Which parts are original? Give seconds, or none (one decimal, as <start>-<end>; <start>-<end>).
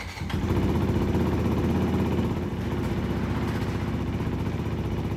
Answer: 0.0-5.2